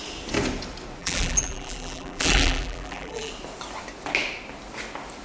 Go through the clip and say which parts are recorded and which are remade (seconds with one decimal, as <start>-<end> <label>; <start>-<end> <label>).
0.0-1.0 recorded; 1.0-3.3 remade; 3.3-5.2 recorded

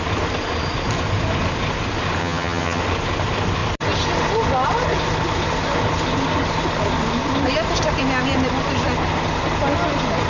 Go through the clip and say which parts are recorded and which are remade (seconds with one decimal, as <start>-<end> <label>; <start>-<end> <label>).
0.0-2.2 recorded; 2.2-2.8 remade; 2.8-10.3 recorded

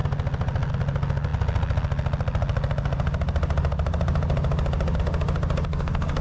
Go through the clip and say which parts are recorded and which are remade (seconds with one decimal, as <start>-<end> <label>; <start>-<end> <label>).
0.0-5.7 recorded; 5.7-6.2 remade